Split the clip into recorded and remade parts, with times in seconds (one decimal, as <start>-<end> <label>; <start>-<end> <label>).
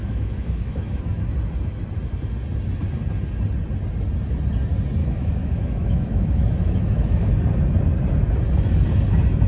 0.0-1.0 remade; 1.0-5.0 recorded; 5.0-7.3 remade; 7.3-9.5 recorded